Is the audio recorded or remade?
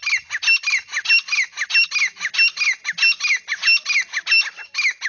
recorded